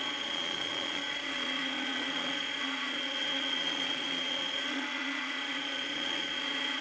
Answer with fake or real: fake